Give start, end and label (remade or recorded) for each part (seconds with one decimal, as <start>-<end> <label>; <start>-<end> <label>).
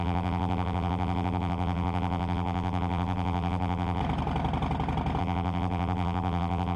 0.0-4.0 remade; 4.0-5.2 recorded; 5.2-6.8 remade